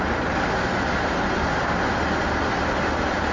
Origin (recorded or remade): recorded